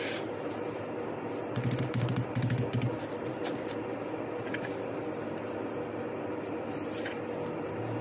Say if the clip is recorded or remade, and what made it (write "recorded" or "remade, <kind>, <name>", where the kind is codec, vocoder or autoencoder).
recorded